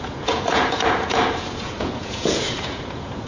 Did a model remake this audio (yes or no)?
yes